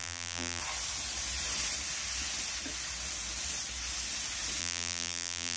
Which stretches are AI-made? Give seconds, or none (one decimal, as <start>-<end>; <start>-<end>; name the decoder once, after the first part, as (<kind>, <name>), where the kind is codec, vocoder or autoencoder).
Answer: 0.0-0.6 (vocoder, BigVGAN v2); 4.6-5.6